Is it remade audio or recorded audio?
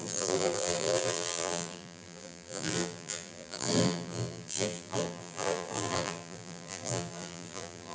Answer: remade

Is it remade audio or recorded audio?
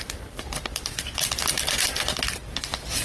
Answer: remade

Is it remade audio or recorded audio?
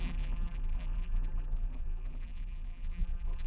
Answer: remade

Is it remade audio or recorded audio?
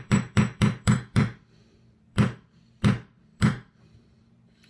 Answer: remade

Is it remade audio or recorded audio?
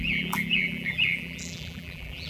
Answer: remade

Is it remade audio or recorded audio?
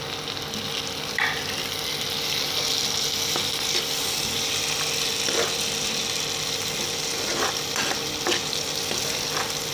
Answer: recorded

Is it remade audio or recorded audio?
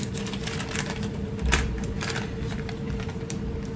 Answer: remade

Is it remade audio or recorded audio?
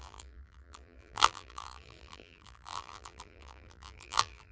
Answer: remade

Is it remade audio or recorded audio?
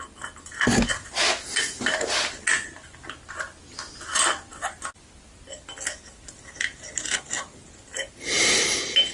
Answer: recorded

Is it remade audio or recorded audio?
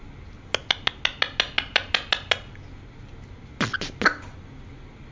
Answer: recorded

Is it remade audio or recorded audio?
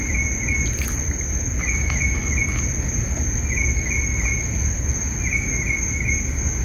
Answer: recorded